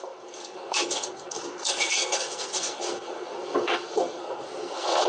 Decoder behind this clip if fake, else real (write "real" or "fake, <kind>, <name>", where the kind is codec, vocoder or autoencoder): fake, codec, SNAC